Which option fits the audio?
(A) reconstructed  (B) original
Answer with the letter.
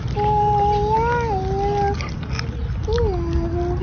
B